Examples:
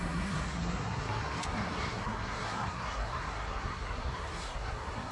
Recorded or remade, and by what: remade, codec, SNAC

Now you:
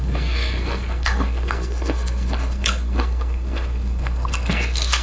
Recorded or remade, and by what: remade, codec, SNAC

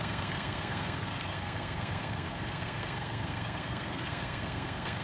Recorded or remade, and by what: remade, codec, SNAC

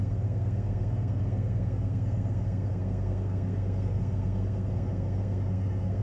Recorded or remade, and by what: remade, codec, SNAC